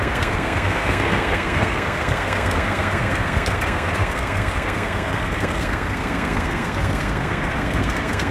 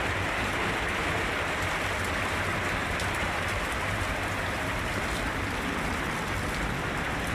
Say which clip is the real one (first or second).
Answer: second